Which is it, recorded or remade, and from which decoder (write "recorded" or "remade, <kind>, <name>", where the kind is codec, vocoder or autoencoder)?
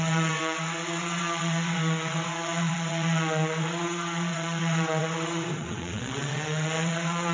remade, vocoder, WaveNeXt